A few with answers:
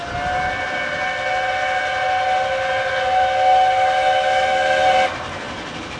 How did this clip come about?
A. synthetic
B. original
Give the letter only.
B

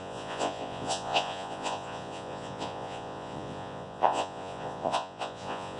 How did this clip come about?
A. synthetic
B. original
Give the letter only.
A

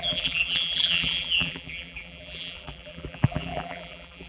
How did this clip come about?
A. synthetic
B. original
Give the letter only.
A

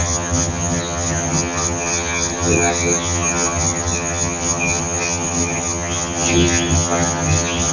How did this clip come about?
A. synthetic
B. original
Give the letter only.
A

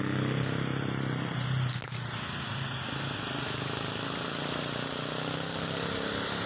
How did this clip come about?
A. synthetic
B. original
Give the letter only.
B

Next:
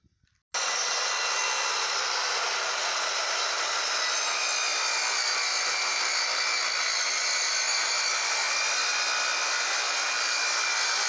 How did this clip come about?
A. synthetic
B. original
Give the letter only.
B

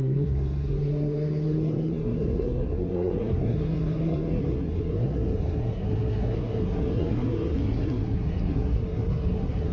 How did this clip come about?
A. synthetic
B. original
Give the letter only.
A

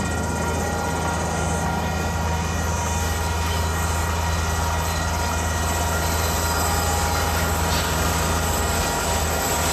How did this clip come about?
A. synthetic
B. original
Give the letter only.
B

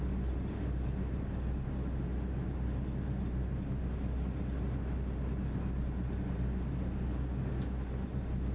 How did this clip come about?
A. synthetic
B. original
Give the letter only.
B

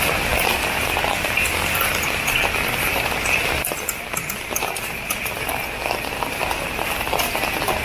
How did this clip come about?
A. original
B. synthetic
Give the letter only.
A